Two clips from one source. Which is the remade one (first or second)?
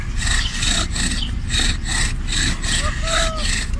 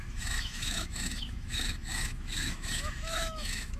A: second